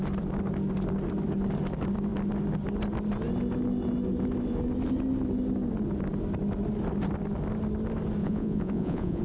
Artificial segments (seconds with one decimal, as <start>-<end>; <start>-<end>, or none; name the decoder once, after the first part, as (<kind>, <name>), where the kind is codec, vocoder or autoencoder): 8.2-9.2 (vocoder, Vocos)